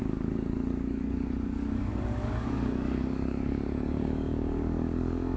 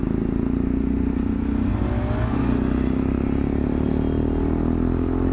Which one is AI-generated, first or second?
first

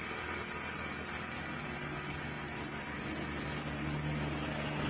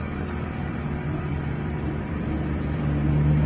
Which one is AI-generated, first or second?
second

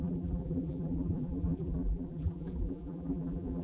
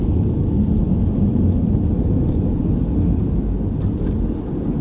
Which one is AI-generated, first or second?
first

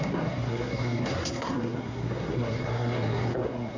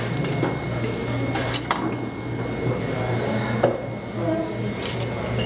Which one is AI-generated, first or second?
first